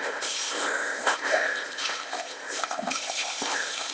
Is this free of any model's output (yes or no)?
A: no